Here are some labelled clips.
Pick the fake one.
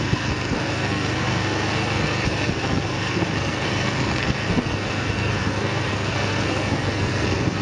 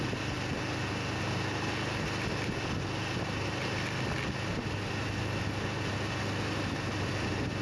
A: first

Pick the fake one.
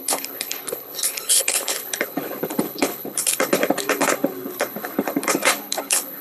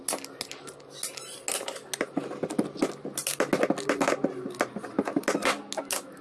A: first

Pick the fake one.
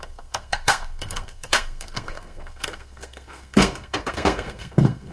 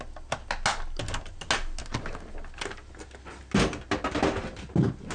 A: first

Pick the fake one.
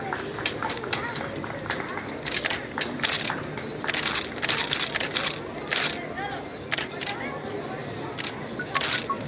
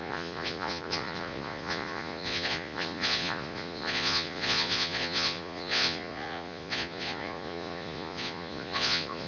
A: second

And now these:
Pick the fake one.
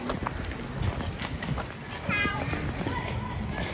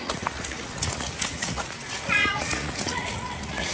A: second